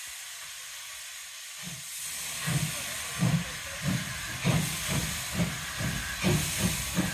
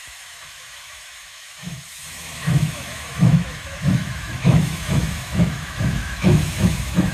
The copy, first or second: second